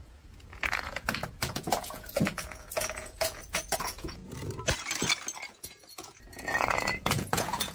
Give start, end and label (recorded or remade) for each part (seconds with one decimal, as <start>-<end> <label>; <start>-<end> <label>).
0.0-4.2 remade; 4.2-5.5 recorded; 5.5-7.7 remade